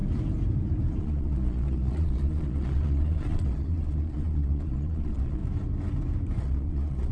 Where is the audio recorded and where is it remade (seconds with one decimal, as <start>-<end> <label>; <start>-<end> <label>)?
0.0-1.0 recorded; 1.0-5.4 remade; 5.4-6.4 recorded; 6.4-7.1 remade